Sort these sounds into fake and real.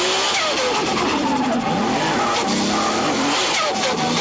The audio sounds real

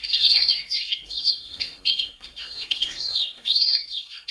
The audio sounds fake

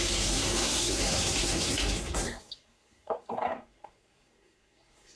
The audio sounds fake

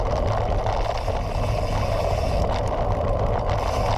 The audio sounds real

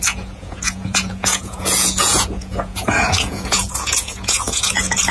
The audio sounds fake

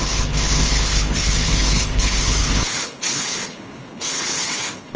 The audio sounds fake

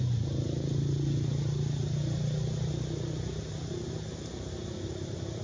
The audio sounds real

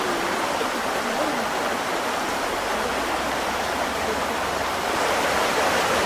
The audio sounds real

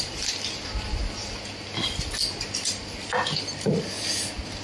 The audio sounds real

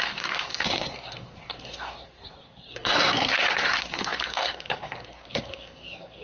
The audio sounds fake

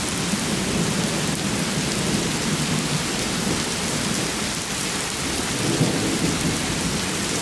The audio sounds real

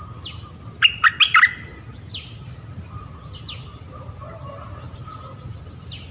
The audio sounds real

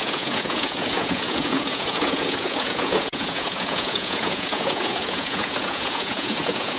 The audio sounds fake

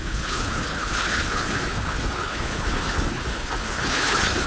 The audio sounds fake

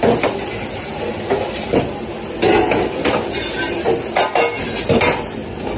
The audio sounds real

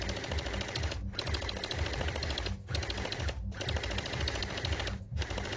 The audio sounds real